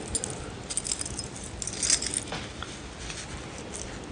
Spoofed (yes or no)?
no